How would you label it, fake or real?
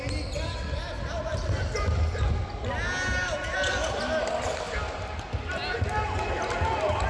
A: real